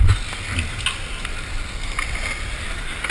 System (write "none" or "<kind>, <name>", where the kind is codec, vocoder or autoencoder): none